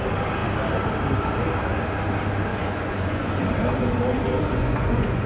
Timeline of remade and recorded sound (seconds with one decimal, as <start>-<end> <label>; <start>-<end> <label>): 0.0-2.5 recorded; 2.5-3.3 remade; 3.3-4.5 recorded; 4.5-5.3 remade